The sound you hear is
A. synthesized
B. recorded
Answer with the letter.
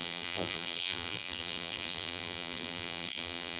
A